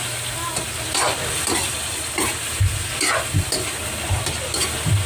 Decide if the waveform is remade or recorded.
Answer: recorded